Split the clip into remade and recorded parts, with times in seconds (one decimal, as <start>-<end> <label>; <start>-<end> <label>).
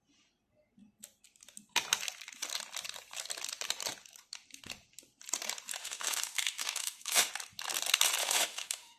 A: 0.0-5.8 recorded; 5.8-7.3 remade; 7.3-8.2 recorded; 8.2-9.0 remade